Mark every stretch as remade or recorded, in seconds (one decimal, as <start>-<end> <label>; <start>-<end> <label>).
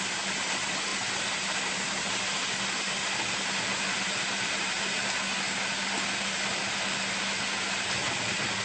0.0-8.6 recorded